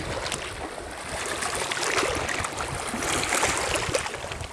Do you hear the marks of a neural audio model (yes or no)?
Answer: no